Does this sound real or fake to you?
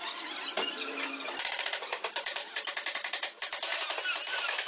fake